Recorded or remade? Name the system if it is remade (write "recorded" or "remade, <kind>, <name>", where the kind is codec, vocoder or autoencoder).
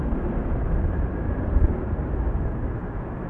recorded